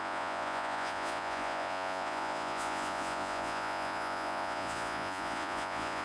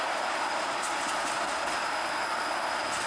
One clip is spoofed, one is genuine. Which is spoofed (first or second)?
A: first